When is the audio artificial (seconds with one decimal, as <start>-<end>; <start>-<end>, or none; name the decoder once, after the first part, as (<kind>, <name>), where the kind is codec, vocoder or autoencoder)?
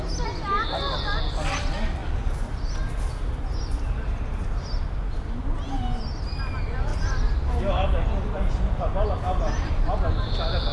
none